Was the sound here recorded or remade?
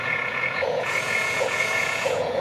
remade